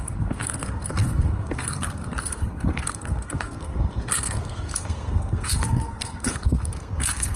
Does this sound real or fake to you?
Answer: fake